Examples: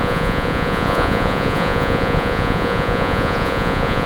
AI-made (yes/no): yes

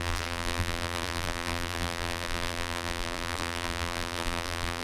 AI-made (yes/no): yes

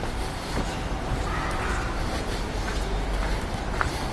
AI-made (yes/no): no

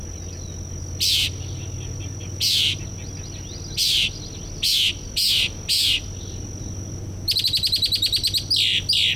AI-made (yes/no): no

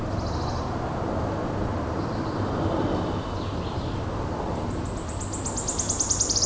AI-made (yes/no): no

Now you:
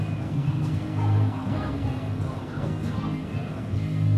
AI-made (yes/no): yes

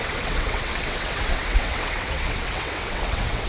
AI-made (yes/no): yes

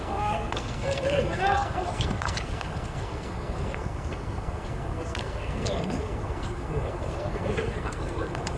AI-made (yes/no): yes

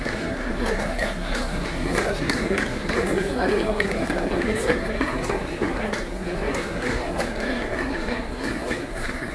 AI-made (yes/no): yes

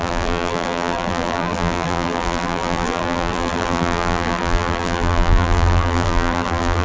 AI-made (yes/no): yes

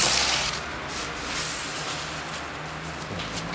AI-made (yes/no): no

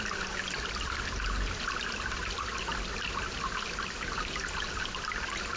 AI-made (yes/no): no